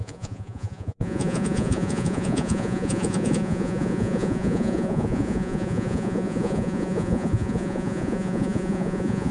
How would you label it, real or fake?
fake